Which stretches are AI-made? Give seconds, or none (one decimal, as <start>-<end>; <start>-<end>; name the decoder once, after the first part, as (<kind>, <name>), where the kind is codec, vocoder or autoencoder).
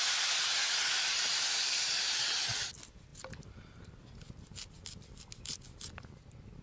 none